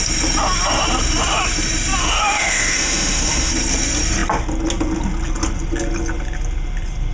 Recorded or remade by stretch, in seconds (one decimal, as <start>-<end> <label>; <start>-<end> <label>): 0.0-2.0 recorded; 2.0-3.5 remade; 3.5-7.1 recorded